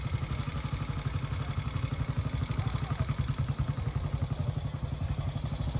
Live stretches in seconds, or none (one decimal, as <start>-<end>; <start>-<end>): 0.0-5.8